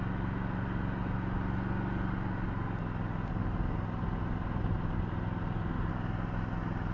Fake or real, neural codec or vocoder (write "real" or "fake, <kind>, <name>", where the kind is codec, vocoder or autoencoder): real